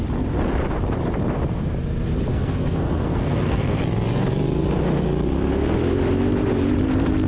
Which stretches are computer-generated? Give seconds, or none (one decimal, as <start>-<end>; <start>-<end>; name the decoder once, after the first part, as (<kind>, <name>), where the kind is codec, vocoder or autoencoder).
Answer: 2.3-3.8 (codec, SNAC)